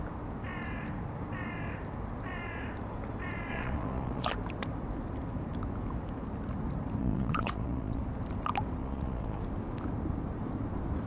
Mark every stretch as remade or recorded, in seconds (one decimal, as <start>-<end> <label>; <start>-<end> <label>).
0.0-3.5 recorded; 3.5-4.3 remade; 4.3-7.0 recorded; 7.0-8.0 remade; 8.0-8.8 recorded; 8.8-9.4 remade; 9.4-11.1 recorded